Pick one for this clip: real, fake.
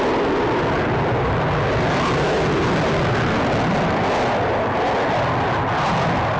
real